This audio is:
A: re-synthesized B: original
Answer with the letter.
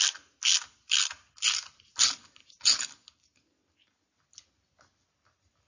B